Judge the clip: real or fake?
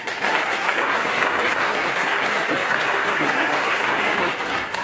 fake